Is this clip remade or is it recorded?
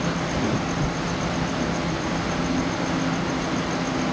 recorded